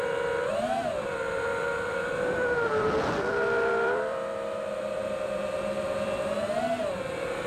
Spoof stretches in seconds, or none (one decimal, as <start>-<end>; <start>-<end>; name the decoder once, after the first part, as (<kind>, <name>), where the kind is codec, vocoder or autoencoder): 0.0-7.5 (vocoder, BigVGAN v2)